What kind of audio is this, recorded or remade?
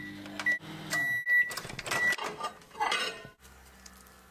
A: recorded